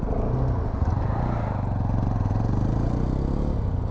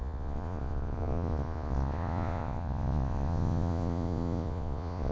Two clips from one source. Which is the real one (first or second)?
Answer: first